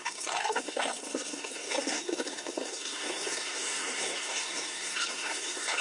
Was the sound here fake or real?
fake